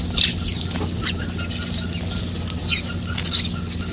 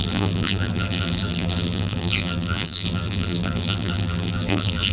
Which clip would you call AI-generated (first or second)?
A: second